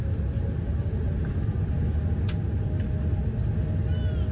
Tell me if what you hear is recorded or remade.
recorded